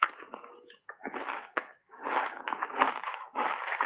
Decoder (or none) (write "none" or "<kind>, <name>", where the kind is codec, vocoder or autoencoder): autoencoder, DAC-VAE